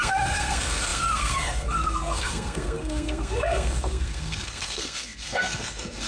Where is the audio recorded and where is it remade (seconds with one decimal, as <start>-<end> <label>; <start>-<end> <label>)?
0.0-6.1 remade